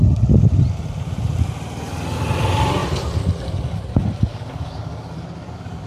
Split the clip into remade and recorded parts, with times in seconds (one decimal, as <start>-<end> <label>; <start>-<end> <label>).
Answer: 0.0-4.3 recorded; 4.3-5.9 remade